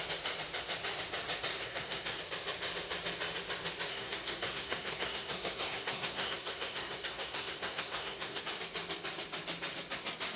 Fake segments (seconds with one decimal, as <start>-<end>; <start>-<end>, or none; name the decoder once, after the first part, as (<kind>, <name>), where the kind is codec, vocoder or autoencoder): 1.5-2.2 (codec, SNAC); 3.9-8.4